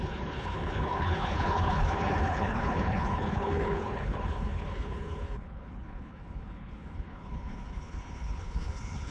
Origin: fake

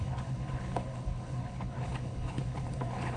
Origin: fake